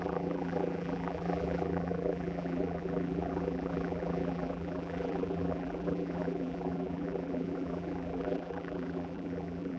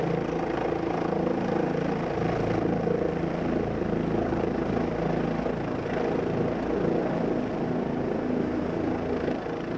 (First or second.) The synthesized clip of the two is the first